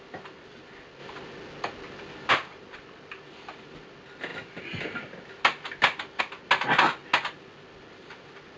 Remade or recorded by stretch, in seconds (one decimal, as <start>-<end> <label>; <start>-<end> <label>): 0.0-8.6 recorded